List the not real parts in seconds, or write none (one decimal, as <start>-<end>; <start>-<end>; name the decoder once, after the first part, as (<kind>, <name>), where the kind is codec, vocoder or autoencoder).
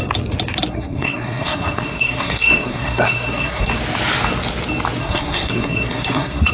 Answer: 0.7-3.7 (codec, SNAC); 5.0-6.5